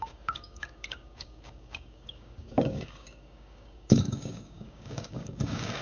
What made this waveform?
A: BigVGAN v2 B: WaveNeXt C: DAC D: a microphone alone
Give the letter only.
C